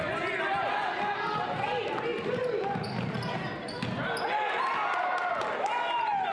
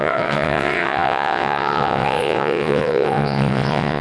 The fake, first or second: second